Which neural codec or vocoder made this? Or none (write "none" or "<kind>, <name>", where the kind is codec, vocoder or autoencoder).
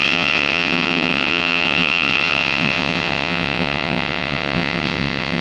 vocoder, WaveNeXt